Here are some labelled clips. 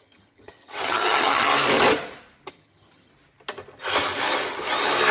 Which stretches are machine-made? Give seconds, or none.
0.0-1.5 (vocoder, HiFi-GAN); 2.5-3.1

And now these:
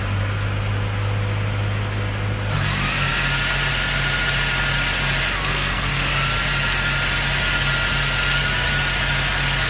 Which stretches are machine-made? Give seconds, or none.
5.5-6.1 (codec, SNAC)

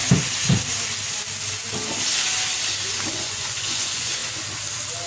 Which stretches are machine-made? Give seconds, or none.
3.1-4.2 (vocoder, Vocos)

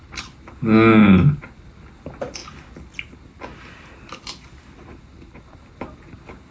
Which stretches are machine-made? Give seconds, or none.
none

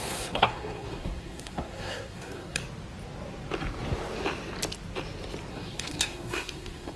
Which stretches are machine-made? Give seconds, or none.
0.0-2.6 (codec, SNAC); 5.5-7.0

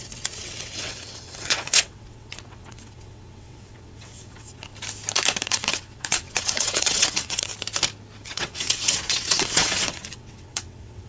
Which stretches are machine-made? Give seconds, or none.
0.0-4.7 (vocoder, WaveNeXt); 5.4-7.5; 8.2-11.1

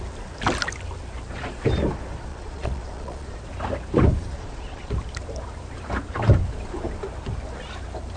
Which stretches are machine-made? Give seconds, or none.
2.3-3.4 (vocoder, Vocos); 4.3-4.9